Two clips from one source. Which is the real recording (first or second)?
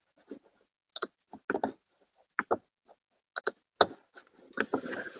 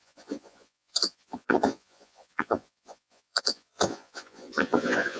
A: first